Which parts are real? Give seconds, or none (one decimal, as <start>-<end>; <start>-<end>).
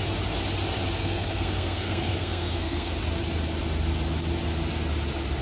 0.0-1.0; 2.9-5.4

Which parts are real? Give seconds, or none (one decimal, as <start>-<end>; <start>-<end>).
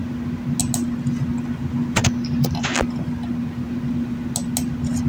0.0-5.1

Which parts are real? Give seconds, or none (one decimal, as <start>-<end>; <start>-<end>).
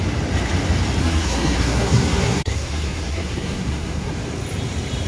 0.0-1.0; 4.1-5.1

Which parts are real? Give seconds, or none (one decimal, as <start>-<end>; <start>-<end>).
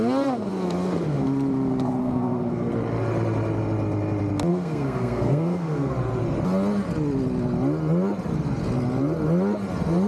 0.0-2.0; 2.7-4.5; 5.9-10.1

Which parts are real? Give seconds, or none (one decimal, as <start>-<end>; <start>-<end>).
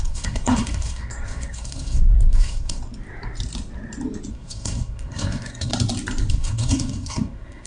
2.8-4.3; 5.7-6.3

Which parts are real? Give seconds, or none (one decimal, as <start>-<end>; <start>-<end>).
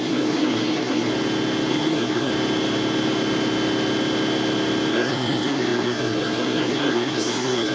1.1-1.7; 2.3-4.9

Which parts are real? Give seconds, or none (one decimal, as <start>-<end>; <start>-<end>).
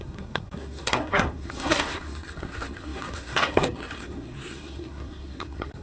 none